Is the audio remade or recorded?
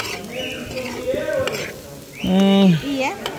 recorded